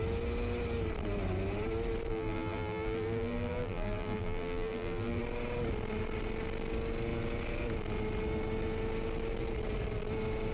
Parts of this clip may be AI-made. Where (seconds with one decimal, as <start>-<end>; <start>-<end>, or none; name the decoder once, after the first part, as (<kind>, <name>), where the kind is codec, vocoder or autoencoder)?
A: 2.1-5.2 (vocoder, BigVGAN v2)